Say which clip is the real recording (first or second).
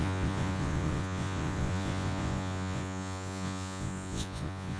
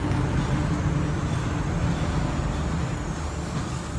second